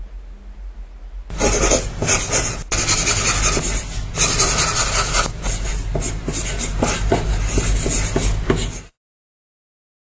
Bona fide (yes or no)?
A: yes